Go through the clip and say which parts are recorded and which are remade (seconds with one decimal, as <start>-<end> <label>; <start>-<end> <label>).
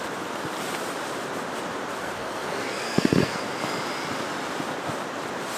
0.0-2.0 recorded; 2.0-3.4 remade; 3.4-5.6 recorded